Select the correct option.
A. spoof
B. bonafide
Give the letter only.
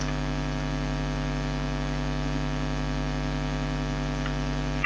B